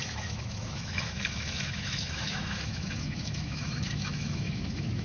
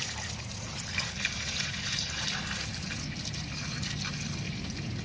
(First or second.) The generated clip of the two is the first